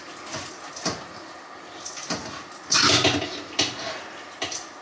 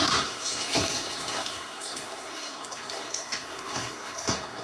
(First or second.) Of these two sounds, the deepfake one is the second